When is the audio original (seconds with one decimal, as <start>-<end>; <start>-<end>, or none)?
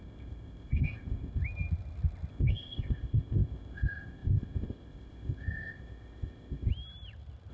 1.4-2.3; 6.7-7.5